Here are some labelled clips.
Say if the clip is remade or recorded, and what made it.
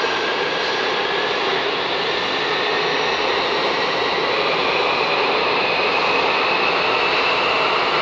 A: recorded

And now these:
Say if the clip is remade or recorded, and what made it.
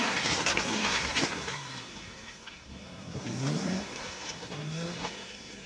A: remade, codec, SNAC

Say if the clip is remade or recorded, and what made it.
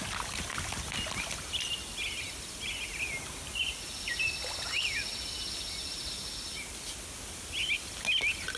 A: recorded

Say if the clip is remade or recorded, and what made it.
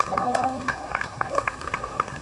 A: remade, codec, SNAC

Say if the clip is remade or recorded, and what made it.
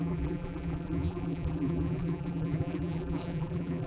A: remade, vocoder, BigVGAN v2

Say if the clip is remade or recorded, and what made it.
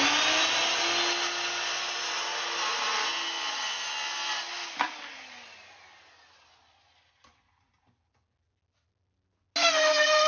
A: recorded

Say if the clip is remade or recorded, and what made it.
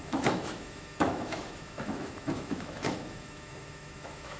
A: remade, autoencoder, DAC-VAE